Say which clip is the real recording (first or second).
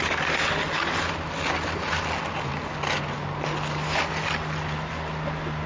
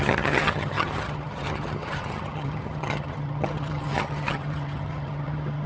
first